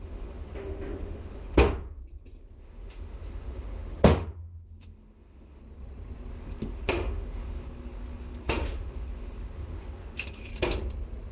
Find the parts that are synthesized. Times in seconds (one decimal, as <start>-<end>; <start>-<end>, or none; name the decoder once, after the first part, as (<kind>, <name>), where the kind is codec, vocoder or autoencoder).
0.0-2.0 (autoencoder, DAC-VAE); 2.6-5.6; 6.3-10.5